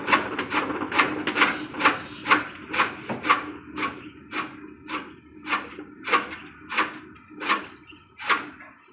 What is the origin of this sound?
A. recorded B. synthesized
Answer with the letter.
A